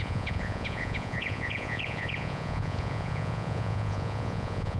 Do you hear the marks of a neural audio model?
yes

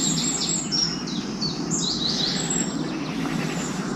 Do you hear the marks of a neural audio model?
no